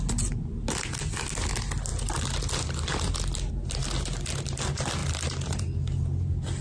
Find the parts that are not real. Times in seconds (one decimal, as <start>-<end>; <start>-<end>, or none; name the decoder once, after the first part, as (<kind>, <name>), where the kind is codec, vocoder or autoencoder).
none